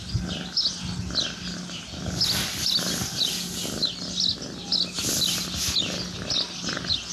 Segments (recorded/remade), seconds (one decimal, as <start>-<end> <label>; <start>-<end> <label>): 0.0-7.1 recorded